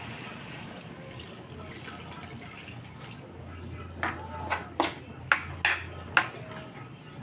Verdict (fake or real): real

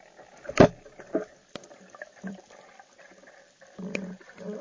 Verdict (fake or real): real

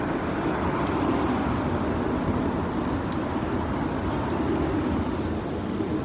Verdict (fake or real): real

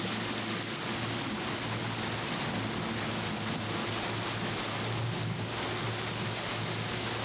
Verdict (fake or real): real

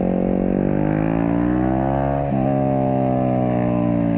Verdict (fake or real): real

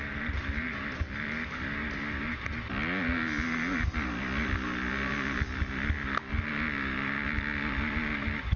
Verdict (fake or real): real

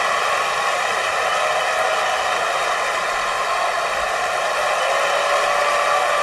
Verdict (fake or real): real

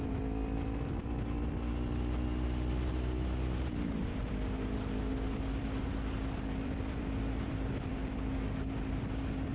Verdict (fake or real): fake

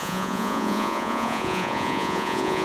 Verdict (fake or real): fake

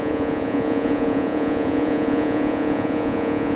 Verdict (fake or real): fake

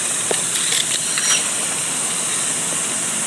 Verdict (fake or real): real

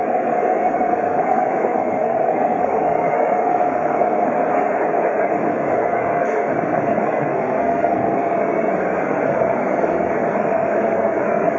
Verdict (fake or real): fake